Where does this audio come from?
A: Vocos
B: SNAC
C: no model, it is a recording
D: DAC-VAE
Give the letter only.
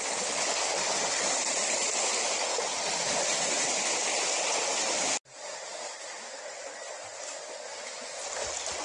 C